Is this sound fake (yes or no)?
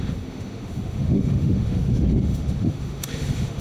yes